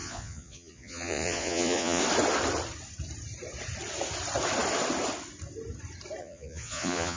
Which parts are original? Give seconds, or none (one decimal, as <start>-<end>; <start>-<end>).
2.0-6.2